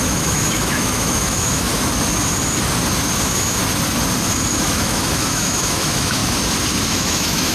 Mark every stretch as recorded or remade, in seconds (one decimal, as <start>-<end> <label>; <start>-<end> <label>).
0.0-1.7 remade; 1.7-3.2 recorded; 3.2-3.6 remade; 3.6-4.5 recorded; 4.5-6.2 remade; 6.2-6.9 recorded; 6.9-7.5 remade